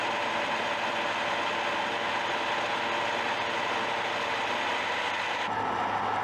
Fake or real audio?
real